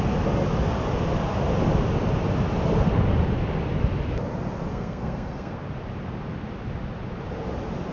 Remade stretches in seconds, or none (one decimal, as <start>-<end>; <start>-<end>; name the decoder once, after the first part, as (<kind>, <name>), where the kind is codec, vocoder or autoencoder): 4.7-5.6 (codec, SNAC)

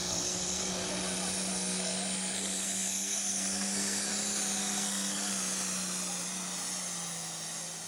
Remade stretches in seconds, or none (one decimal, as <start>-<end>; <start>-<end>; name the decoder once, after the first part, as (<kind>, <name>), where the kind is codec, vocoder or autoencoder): 0.0-0.7 (codec, SNAC); 1.5-4.1; 4.6-5.3

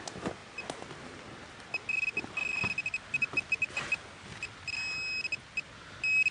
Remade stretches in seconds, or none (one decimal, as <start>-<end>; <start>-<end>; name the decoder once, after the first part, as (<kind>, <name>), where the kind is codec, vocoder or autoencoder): none

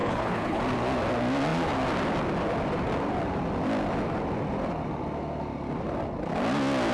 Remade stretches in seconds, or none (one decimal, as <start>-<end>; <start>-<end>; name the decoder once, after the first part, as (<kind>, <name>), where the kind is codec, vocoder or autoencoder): 0.0-0.6 (codec, HILCodec)